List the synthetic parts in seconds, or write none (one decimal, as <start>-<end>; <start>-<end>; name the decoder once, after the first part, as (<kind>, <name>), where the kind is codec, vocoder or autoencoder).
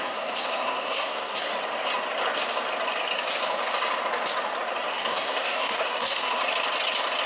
0.0-1.5 (codec, SNAC); 4.9-6.4